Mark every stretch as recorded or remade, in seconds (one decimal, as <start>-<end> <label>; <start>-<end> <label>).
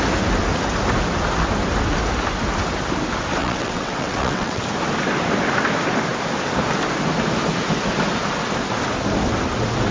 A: 0.0-3.4 recorded; 3.4-4.6 remade; 4.6-9.9 recorded